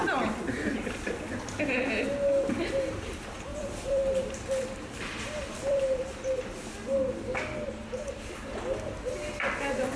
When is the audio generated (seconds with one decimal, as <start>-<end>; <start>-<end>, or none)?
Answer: 0.0-1.0; 3.5-5.8